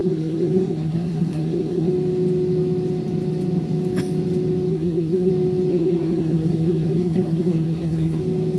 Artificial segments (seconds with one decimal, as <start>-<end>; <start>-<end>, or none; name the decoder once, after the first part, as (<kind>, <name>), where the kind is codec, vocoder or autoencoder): 0.0-1.9 (codec, SNAC); 4.7-5.3; 5.7-8.2